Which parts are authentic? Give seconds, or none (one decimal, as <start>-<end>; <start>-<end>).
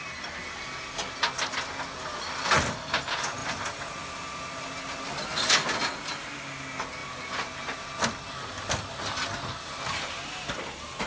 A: 0.0-3.4; 3.9-7.0; 7.9-11.1